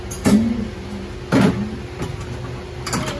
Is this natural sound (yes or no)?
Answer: yes